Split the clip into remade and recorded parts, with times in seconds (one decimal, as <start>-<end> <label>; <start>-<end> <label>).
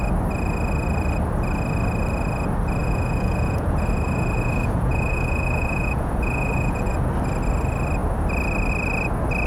0.0-2.8 recorded; 2.8-7.1 remade; 7.1-9.5 recorded